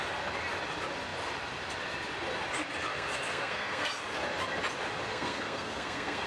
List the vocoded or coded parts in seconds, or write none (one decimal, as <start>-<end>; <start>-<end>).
2.9-3.9; 5.1-6.3